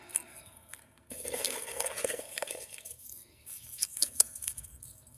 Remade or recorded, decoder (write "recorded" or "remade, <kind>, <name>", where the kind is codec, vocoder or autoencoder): remade, codec, SNAC